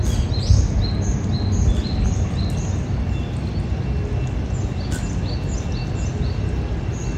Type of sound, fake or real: real